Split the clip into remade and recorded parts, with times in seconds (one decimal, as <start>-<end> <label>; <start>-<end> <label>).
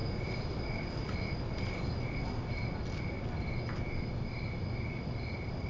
0.0-5.7 recorded